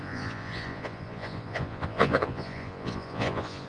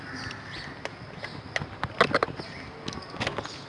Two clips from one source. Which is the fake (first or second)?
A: first